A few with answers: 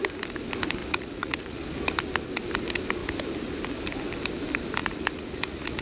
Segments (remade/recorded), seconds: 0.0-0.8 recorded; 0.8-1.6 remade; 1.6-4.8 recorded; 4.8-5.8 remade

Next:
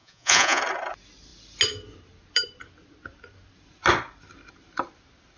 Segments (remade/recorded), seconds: 0.0-0.6 remade; 0.6-5.4 recorded